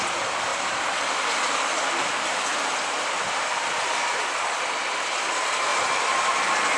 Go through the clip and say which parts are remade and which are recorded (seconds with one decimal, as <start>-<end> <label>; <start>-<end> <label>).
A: 0.0-0.5 remade; 0.5-4.6 recorded; 4.6-5.7 remade; 5.7-6.3 recorded; 6.3-6.8 remade